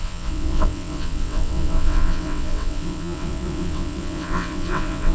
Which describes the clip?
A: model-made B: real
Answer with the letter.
A